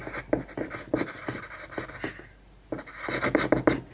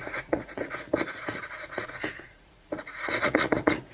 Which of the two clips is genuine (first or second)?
first